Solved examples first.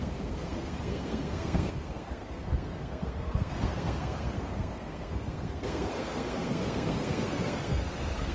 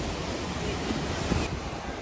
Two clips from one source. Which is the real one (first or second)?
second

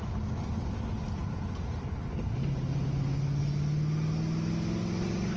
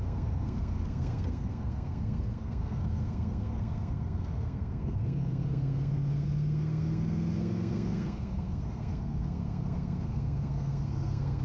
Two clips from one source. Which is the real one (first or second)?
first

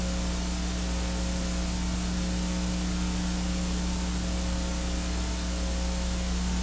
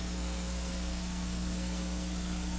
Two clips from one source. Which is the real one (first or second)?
first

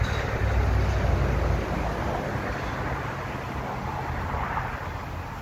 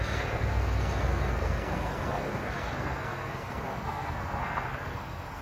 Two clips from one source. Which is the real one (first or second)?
first